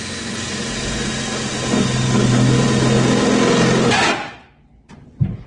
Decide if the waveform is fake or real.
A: real